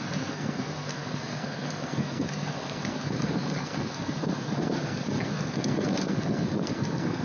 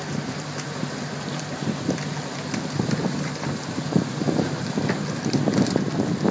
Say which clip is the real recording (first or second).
second